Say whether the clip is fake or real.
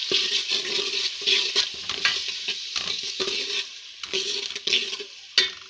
real